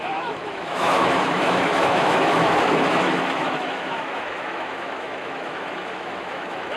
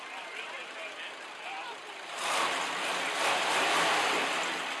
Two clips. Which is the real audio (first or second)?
second